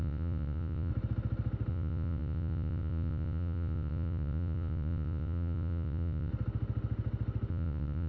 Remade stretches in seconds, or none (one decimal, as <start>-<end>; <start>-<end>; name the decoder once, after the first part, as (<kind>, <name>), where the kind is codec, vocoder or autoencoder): 0.0-0.9 (vocoder, Vocos); 1.7-6.3; 7.5-8.1